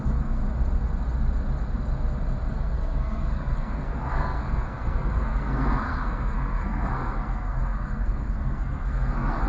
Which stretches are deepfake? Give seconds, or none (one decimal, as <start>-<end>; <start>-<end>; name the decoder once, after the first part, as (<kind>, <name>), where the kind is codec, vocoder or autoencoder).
0.0-0.4 (codec, SNAC); 2.5-9.5